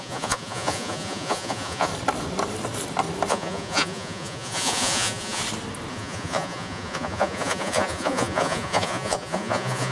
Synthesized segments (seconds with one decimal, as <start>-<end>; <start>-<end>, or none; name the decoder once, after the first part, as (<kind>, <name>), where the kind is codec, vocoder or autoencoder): 0.0-1.9 (vocoder, Vocos); 3.3-5.4; 5.9-9.9